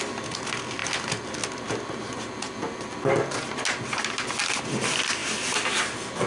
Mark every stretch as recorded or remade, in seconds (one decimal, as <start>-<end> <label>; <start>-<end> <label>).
0.0-6.3 recorded